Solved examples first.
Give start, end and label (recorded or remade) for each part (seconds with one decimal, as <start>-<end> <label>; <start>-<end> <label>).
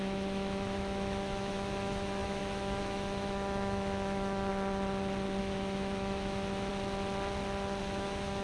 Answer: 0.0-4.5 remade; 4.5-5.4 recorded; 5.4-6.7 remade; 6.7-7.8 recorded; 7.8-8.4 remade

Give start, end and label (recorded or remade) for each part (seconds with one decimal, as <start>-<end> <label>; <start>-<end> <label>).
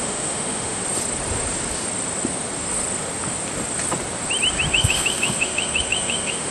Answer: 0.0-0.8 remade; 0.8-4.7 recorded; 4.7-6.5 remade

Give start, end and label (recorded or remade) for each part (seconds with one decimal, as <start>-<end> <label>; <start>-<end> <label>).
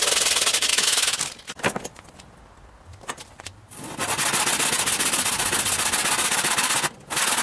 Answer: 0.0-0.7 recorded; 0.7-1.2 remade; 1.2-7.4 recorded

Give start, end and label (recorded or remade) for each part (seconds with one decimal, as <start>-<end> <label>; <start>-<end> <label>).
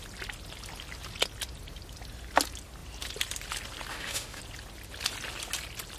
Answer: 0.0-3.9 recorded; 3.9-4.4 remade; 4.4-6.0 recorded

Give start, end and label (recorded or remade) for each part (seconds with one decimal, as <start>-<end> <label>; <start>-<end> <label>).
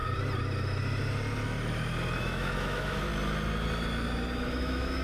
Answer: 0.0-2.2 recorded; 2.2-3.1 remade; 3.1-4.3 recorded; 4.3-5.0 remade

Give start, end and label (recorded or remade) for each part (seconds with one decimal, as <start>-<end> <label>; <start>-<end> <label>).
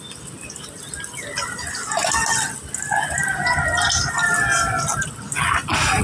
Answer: 0.0-6.0 recorded